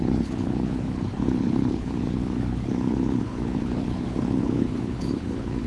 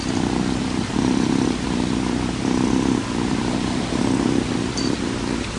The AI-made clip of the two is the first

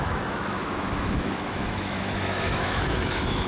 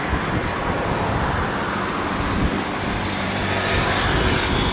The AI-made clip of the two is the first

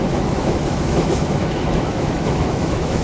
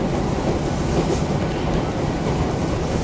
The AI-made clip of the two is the first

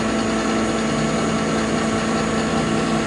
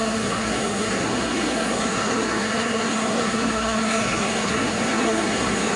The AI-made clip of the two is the second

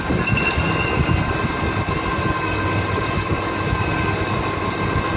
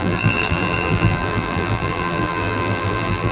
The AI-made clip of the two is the second